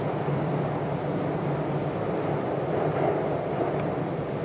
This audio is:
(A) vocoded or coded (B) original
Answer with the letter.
B